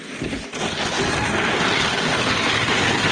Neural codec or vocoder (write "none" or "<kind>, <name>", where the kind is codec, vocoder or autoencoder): none